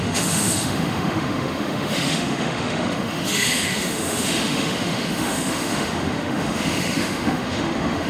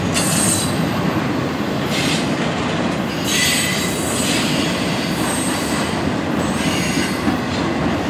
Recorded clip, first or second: second